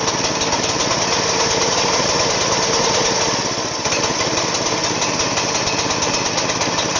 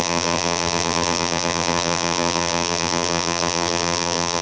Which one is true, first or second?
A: first